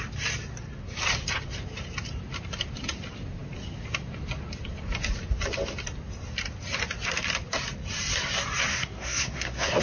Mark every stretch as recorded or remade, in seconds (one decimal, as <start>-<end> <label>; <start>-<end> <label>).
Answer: 0.0-8.7 recorded; 8.7-9.8 remade